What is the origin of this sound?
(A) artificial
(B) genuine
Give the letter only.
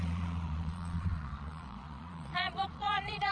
A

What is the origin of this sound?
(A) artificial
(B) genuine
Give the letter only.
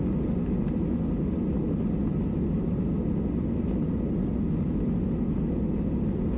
B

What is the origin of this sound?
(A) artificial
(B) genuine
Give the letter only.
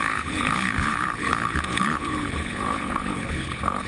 A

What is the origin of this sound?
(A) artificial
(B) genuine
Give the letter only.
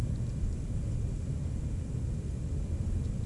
B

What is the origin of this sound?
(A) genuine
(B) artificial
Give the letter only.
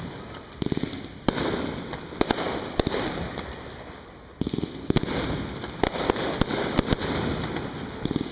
A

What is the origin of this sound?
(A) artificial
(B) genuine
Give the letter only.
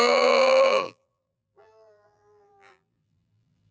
A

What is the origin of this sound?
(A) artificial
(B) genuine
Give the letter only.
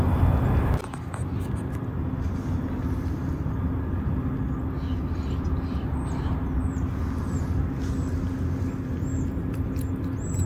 B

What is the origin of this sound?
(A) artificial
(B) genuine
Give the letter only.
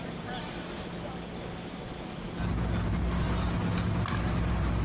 B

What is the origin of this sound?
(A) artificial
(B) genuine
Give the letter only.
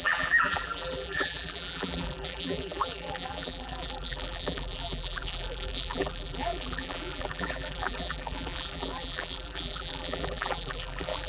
A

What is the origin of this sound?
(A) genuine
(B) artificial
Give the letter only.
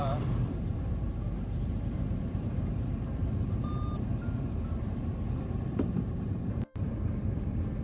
B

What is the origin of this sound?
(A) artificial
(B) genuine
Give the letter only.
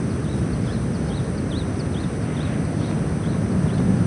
B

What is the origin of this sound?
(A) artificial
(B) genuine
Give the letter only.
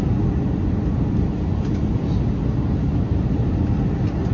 B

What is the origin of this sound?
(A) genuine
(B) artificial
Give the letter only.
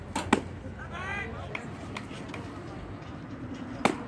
A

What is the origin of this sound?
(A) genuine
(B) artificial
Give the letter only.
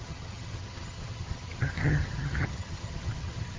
B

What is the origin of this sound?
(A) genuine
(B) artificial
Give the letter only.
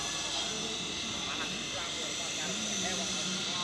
A